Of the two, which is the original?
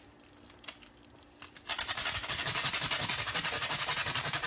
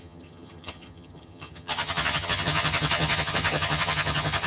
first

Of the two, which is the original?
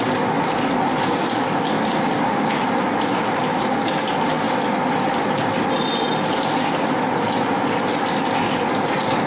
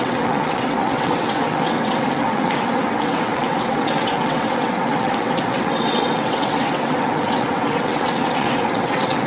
first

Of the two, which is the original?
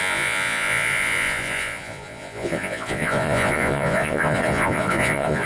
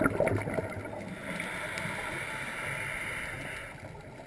second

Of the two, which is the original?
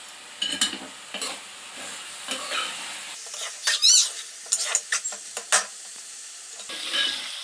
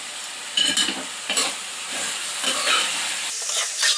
first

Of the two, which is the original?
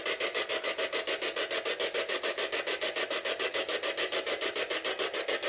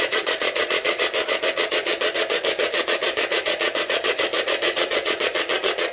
first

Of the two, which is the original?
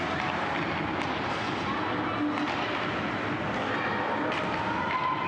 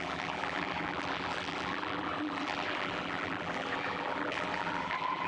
first